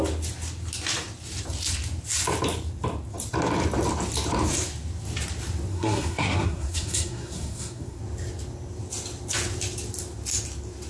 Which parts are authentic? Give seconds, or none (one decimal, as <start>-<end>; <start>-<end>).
0.0-5.7; 8.0-10.9